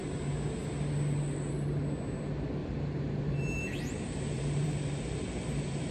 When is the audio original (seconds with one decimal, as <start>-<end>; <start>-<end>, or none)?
0.0-2.6